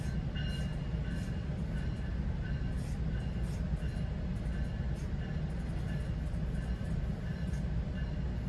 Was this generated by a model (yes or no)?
no